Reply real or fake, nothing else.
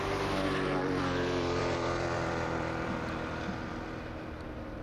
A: fake